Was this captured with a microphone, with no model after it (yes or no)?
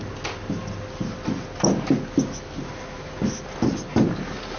yes